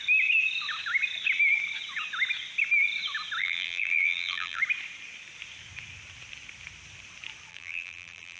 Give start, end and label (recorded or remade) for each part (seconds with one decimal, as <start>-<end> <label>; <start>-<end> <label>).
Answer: 0.0-3.4 recorded; 3.4-4.6 remade; 4.6-7.5 recorded; 7.5-8.4 remade